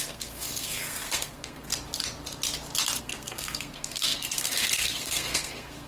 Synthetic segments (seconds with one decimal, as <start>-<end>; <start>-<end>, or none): 0.0-1.7; 3.0-5.9